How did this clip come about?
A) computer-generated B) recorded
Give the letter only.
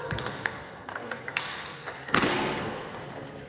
A